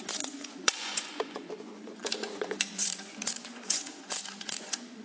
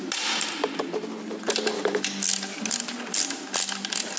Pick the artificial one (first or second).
first